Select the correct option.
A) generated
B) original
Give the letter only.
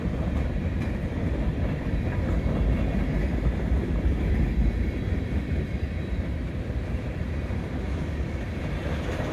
A